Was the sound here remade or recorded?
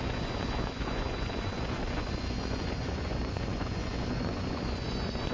remade